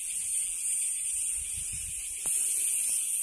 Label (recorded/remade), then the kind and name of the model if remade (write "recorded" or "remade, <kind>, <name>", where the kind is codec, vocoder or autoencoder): recorded